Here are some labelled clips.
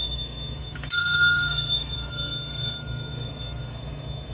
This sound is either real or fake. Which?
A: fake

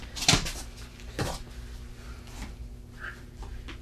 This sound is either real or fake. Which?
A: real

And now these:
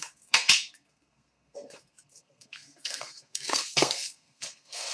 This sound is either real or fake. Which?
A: fake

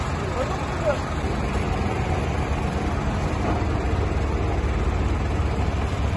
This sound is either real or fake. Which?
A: real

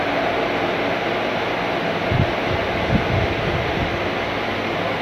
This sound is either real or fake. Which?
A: real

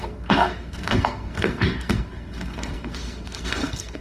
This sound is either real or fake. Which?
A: fake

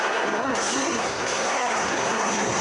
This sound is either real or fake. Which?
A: fake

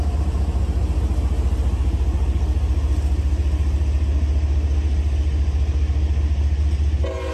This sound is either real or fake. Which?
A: real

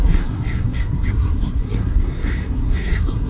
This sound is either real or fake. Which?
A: fake